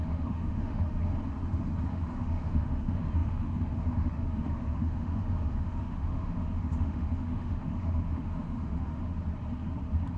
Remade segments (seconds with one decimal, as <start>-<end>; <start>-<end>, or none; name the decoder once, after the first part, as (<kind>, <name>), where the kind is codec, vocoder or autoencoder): 0.0-1.0 (autoencoder, DAC-VAE); 1.9-9.1